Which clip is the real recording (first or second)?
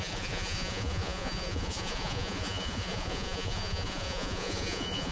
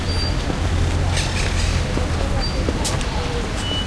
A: second